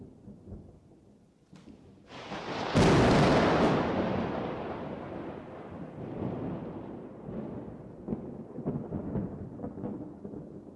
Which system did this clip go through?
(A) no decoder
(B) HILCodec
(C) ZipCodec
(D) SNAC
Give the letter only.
A